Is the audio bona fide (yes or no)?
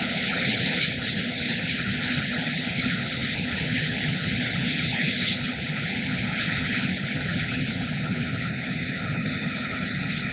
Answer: no